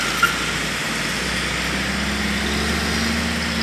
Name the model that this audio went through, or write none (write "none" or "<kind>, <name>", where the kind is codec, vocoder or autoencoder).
none